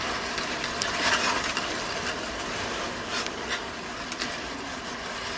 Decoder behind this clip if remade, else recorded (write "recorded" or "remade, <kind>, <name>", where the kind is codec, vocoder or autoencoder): recorded